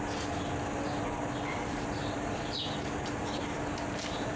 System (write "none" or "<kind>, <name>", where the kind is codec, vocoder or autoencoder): none